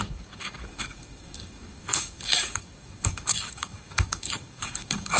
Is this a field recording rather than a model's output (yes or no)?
no